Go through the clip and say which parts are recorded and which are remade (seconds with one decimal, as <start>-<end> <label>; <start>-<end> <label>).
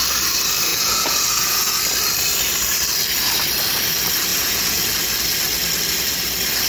0.0-0.7 recorded; 0.7-1.8 remade; 1.8-4.3 recorded; 4.3-4.8 remade; 4.8-6.7 recorded